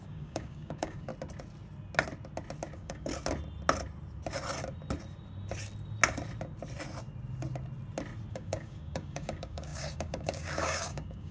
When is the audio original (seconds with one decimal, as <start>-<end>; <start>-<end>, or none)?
1.1-2.7; 3.1-8.3